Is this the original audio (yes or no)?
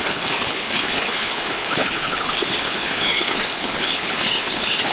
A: no